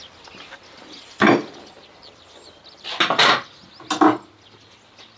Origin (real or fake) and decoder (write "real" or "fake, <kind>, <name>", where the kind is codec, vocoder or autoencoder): real